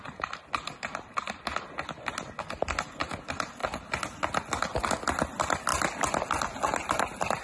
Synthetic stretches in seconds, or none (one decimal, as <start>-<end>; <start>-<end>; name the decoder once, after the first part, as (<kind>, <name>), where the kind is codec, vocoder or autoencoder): none